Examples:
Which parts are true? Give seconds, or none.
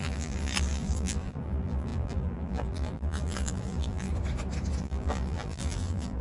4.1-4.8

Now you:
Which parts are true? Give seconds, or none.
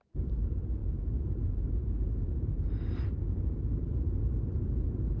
none